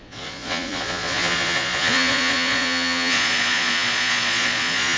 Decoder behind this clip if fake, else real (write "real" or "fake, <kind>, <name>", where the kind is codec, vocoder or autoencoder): fake, vocoder, Vocos